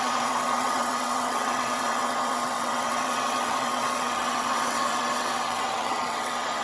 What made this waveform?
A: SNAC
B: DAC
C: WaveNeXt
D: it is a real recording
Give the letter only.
C